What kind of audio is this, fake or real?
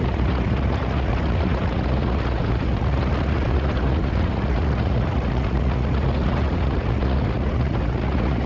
fake